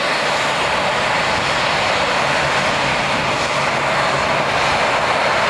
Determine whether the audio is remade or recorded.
recorded